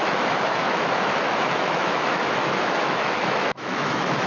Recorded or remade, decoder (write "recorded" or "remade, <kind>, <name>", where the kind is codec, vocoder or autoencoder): remade, autoencoder, DAC-VAE